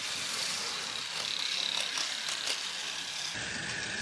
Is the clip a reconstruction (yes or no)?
no